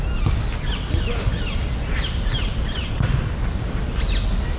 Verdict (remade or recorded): recorded